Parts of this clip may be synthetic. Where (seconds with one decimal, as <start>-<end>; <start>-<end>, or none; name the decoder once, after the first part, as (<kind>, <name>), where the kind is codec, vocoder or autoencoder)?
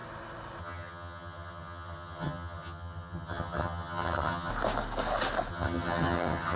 0.6-4.5 (vocoder, HiFi-GAN); 5.5-6.6